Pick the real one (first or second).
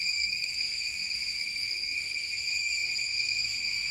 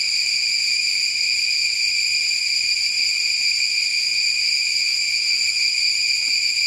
second